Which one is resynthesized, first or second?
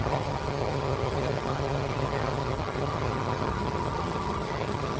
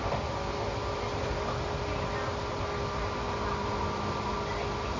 first